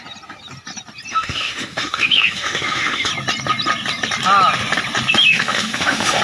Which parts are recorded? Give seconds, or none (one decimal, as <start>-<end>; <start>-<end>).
0.0-1.1; 3.1-5.3